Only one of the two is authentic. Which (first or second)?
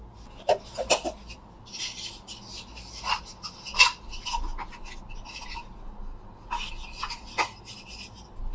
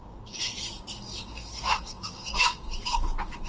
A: first